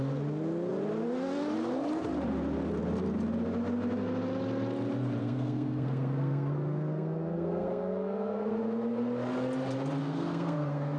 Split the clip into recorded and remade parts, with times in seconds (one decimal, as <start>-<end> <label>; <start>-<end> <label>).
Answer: 0.0-5.2 recorded; 5.2-8.6 remade; 8.6-10.0 recorded; 10.0-11.0 remade